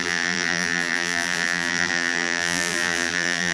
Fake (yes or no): yes